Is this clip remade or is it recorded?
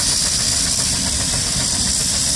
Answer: recorded